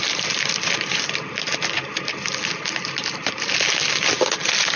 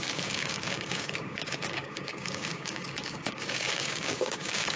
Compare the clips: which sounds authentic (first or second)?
first